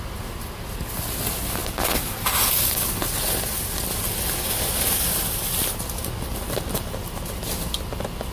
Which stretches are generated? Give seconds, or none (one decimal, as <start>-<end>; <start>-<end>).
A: none